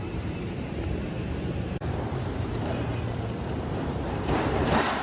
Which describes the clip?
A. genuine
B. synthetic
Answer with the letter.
B